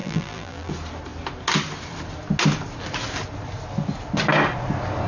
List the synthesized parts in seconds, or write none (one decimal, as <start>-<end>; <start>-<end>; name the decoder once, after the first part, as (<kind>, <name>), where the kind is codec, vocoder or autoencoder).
0.0-0.7 (vocoder, BigVGAN v2)